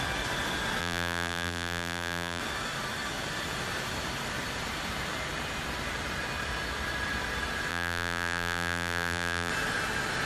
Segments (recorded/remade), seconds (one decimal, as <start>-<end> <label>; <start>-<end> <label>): 0.0-0.8 recorded; 0.8-2.4 remade; 2.4-7.7 recorded; 7.7-9.5 remade; 9.5-10.3 recorded